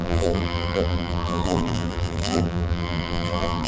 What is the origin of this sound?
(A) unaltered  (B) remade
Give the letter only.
B